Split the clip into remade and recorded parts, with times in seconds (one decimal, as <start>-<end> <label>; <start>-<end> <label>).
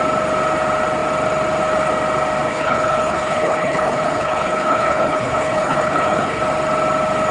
0.0-2.5 recorded; 2.5-6.4 remade; 6.4-7.3 recorded